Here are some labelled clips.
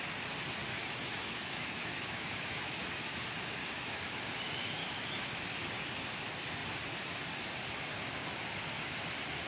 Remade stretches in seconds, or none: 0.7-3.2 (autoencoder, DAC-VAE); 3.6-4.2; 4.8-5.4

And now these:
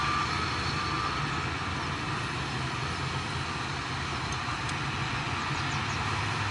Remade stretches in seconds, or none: 5.0-5.6 (vocoder, Vocos)

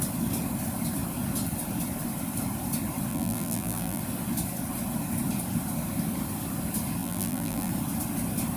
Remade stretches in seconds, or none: 3.1-4.0 (vocoder, BigVGAN v2); 7.0-7.7

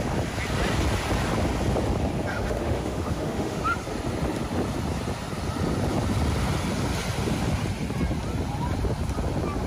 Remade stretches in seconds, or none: 2.3-3.6 (autoencoder, DAC-VAE)